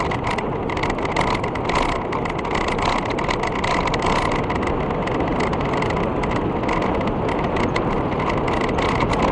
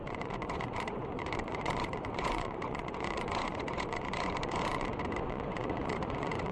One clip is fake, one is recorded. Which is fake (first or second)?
second